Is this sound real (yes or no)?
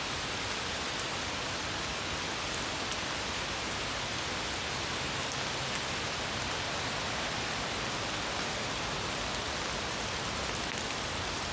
yes